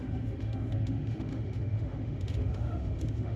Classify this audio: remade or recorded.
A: remade